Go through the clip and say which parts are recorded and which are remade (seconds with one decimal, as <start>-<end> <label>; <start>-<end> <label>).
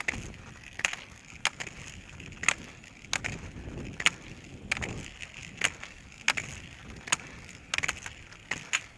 0.0-9.0 recorded